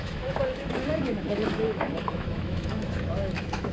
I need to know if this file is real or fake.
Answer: fake